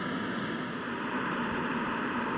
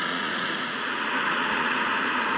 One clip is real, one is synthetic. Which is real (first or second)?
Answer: first